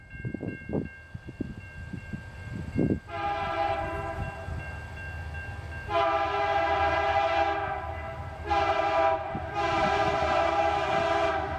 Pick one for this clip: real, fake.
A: real